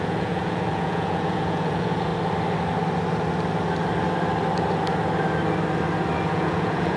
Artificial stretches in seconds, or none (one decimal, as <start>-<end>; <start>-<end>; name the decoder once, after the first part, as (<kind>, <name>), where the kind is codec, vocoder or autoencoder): 0.0-2.1 (vocoder, Vocos); 6.3-7.0

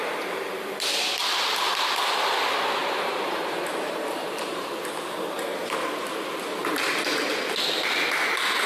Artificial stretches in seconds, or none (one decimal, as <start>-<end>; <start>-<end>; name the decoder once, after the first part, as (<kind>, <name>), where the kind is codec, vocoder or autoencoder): 2.8-4.7 (vocoder, BigVGAN v2)

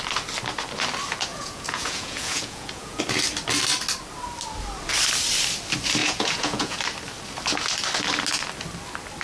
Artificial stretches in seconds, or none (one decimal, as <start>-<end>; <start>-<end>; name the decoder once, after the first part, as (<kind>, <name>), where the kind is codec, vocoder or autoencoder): 1.3-3.0 (vocoder, Vocos); 6.0-6.8

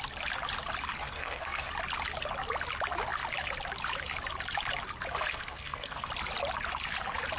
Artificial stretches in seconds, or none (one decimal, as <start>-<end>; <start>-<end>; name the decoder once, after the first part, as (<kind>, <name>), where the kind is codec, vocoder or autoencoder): 1.0-1.7 (codec, SNAC); 5.3-6.1

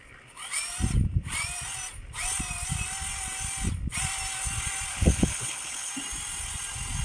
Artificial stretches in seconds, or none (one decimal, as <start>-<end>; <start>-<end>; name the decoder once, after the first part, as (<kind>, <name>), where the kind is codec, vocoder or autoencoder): 4.9-5.9 (codec, HILCodec)

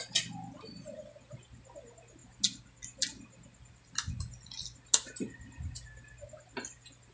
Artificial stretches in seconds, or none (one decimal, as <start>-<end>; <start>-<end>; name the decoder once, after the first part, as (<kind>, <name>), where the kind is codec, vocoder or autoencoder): none

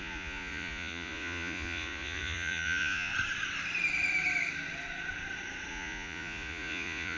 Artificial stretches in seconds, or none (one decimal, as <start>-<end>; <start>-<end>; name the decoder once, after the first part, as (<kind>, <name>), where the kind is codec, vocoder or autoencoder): 0.0-3.1 (vocoder, Vocos); 5.7-7.2

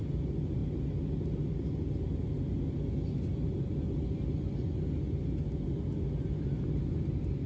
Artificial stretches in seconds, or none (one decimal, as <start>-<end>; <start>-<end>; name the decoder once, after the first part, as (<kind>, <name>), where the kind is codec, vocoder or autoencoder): none